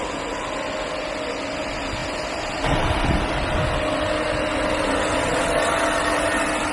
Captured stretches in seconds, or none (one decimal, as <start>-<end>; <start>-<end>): 0.0-5.3; 6.2-6.7